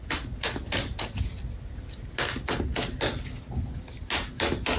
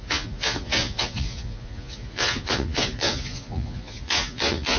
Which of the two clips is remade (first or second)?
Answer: second